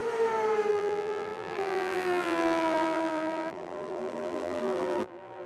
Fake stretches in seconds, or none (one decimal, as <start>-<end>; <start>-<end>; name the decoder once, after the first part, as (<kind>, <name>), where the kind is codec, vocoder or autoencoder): 0.7-5.5 (vocoder, BigVGAN v2)